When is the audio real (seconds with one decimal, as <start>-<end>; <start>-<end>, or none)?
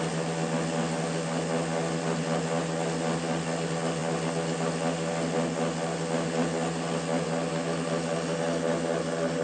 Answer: 0.0-9.4